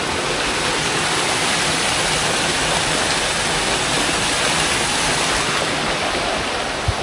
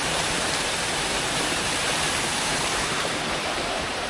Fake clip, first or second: second